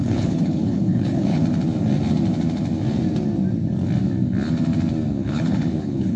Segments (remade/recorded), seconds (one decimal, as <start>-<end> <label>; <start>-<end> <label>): 0.0-1.4 remade; 1.4-5.1 recorded; 5.1-6.2 remade